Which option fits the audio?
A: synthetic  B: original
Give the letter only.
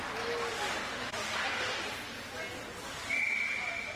B